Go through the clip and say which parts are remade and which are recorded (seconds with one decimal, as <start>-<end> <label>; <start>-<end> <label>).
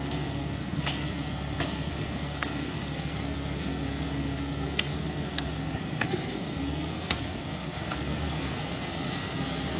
0.0-9.8 remade